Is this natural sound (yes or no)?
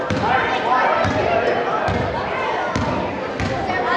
yes